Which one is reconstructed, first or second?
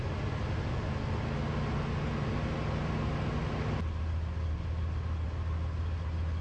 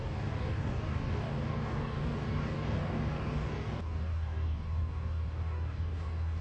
second